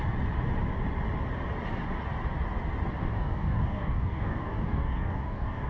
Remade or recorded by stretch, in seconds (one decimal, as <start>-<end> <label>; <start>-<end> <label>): 0.0-3.1 recorded; 3.1-5.7 remade